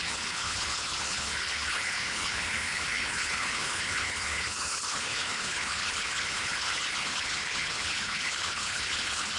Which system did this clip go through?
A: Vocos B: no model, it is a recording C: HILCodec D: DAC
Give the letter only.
C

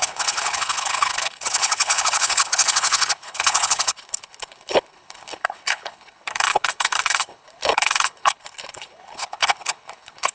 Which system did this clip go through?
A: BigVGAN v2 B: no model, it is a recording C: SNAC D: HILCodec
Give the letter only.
D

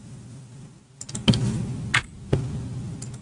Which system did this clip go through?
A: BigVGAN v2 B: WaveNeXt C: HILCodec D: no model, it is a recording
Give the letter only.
D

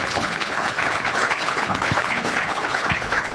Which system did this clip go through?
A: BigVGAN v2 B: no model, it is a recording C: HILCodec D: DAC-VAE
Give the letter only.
C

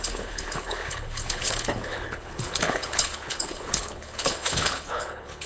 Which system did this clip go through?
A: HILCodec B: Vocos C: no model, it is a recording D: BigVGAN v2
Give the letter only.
A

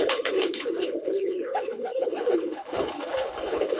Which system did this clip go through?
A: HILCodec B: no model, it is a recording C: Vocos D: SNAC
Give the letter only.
A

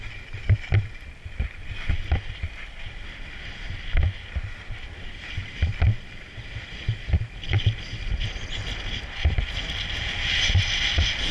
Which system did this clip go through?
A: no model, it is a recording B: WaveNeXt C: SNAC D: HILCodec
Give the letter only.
A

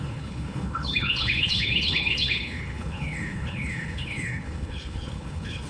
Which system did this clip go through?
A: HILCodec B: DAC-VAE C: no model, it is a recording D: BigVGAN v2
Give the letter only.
A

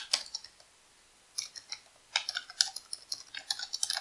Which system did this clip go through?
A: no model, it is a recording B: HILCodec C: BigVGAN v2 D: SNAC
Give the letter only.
A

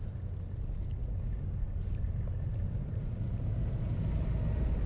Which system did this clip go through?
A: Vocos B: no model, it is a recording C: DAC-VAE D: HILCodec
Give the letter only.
B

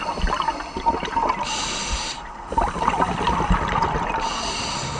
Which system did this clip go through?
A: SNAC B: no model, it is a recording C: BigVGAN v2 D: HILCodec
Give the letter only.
B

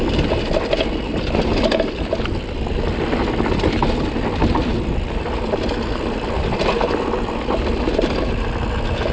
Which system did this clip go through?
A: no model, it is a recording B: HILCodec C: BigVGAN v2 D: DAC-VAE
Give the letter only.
A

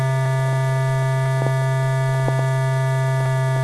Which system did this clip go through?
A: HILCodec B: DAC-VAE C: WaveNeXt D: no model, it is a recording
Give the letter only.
D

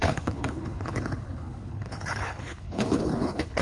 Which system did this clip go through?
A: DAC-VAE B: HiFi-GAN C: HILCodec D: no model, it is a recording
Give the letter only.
C